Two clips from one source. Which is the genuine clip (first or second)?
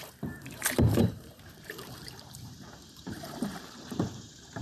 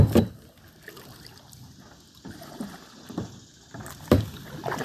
second